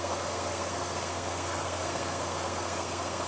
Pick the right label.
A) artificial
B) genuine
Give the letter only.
A